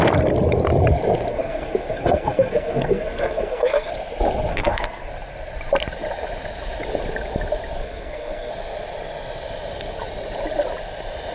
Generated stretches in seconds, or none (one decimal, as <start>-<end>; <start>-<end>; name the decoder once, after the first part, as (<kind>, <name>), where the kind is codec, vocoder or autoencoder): 1.3-3.9 (codec, SNAC); 4.5-5.1; 7.8-8.5